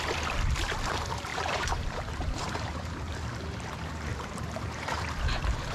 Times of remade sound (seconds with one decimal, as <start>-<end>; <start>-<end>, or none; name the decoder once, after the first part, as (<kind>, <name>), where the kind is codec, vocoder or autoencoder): 1.3-2.9 (vocoder, BigVGAN v2); 4.1-5.0